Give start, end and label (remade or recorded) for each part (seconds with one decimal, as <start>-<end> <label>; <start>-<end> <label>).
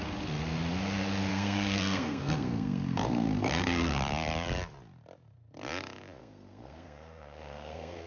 0.0-1.3 recorded; 1.3-4.0 remade; 4.0-6.2 recorded; 6.2-8.1 remade